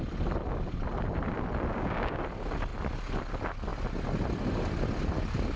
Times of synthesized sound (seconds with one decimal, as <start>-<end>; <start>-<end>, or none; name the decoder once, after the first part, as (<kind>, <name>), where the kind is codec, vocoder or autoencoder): 1.7-2.2 (codec, DAC)